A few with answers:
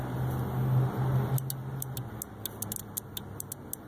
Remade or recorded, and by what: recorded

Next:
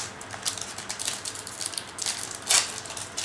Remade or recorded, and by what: recorded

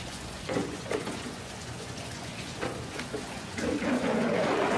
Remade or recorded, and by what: remade, vocoder, Vocos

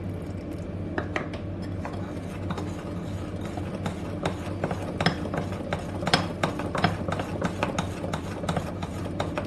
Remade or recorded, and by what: recorded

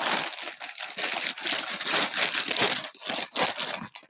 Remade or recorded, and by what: recorded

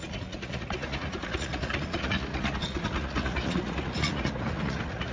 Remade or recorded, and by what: remade, vocoder, Vocos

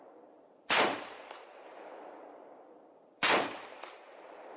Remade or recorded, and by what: remade, vocoder, BigVGAN v2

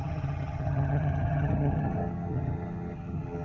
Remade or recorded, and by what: remade, vocoder, HiFi-GAN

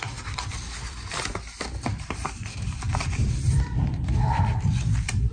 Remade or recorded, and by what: remade, vocoder, BigVGAN v2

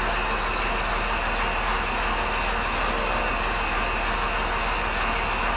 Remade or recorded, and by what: recorded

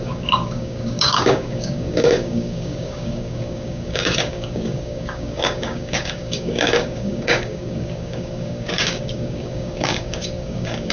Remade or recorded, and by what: remade, codec, DAC